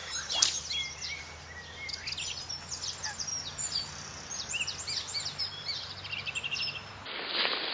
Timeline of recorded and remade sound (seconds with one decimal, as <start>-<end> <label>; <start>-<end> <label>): 0.0-7.7 recorded